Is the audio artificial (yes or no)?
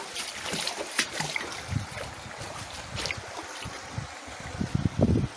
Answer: no